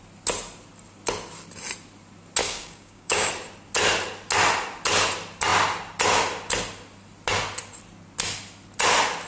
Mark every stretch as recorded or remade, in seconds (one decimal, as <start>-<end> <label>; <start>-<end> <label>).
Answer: 0.0-2.4 recorded; 2.4-3.3 remade; 3.3-9.3 recorded